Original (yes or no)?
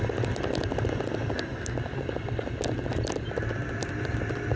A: yes